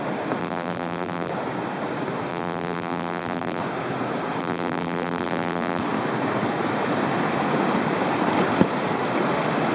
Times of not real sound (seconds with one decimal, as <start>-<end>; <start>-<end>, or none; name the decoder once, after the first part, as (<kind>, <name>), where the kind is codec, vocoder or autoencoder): 0.4-1.3 (vocoder, BigVGAN v2); 2.3-3.6; 4.4-5.8